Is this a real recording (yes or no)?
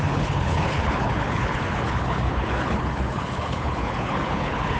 no